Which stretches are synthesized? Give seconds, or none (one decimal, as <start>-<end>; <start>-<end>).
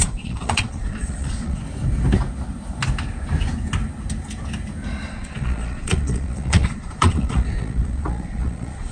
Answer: 0.0-1.6; 5.1-8.9